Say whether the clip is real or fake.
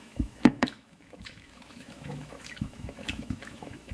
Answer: fake